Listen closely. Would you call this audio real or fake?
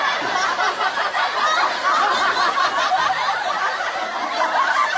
real